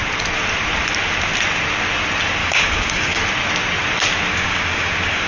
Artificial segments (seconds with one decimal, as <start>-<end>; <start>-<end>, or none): 2.4-3.2; 4.3-5.3